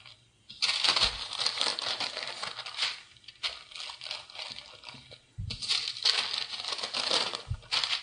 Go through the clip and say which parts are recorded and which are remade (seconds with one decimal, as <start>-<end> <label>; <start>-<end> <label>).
0.0-8.0 recorded